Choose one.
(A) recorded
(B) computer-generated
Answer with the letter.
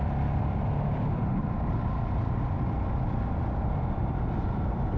A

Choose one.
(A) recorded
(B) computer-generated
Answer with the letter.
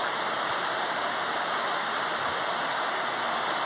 A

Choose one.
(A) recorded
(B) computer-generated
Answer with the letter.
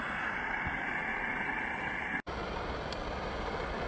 A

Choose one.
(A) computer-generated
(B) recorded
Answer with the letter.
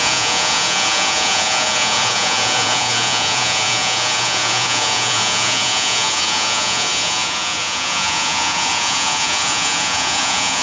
A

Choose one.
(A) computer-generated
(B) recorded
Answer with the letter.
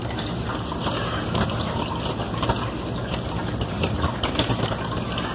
B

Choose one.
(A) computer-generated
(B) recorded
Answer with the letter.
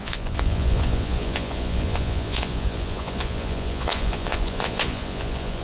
A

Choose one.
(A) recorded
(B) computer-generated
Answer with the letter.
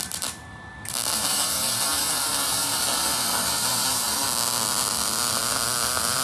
A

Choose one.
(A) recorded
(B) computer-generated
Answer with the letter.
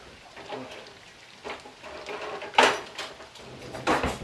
A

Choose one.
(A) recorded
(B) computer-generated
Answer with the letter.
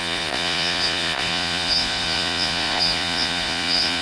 B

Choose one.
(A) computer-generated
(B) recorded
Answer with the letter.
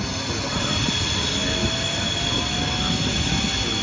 B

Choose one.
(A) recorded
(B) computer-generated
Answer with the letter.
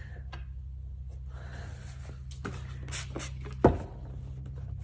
A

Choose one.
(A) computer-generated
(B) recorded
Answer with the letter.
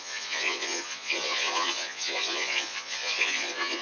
A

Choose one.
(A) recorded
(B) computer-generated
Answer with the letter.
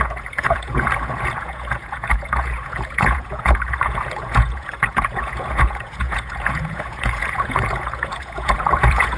B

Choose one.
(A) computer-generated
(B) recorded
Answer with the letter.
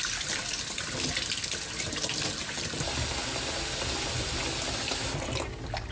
B